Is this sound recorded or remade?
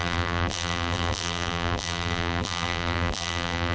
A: remade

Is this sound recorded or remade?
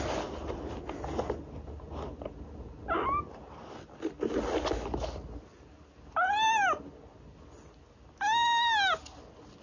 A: recorded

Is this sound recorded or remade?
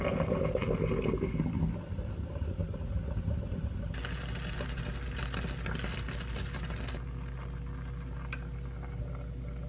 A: recorded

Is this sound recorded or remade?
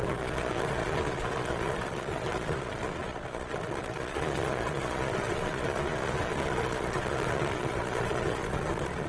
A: remade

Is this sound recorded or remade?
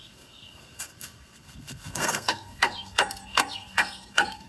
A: remade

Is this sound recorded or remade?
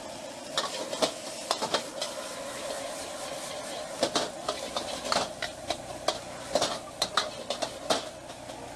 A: recorded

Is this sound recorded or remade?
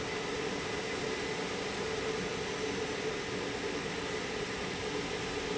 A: recorded